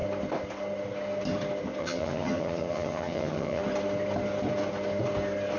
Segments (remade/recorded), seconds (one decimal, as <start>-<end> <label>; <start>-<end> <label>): 0.0-1.8 recorded; 1.8-3.6 remade; 3.6-5.6 recorded